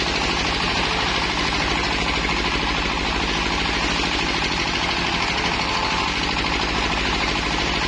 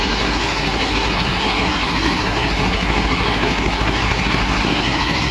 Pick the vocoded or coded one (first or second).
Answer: second